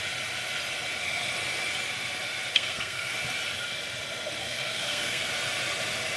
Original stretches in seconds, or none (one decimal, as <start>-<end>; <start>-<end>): 0.0-2.5; 3.1-4.4; 5.3-6.2